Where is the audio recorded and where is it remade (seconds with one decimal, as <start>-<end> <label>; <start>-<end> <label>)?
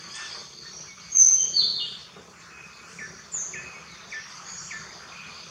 0.0-0.4 recorded; 0.4-1.1 remade; 1.1-5.5 recorded